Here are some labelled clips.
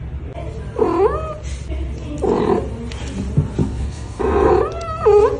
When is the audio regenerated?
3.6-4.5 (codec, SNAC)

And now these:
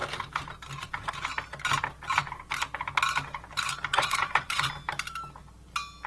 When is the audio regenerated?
3.9-4.7 (vocoder, Vocos)

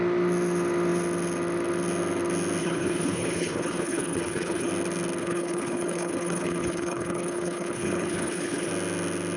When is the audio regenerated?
2.6-4.7 (codec, HILCodec); 5.2-8.7

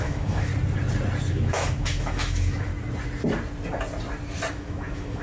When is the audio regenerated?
0.0-0.5 (autoencoder, DAC-VAE); 1.3-2.7; 4.5-5.2

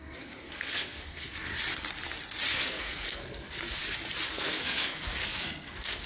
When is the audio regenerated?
0.0-1.5 (codec, SNAC); 2.5-3.8; 4.3-6.1